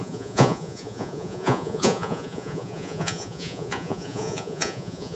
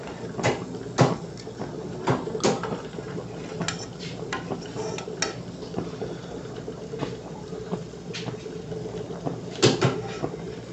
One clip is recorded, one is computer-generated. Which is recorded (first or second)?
second